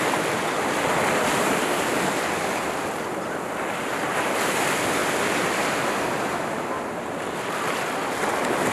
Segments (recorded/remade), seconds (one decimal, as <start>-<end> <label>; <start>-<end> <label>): 0.0-8.7 recorded